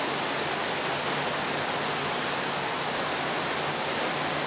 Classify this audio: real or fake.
real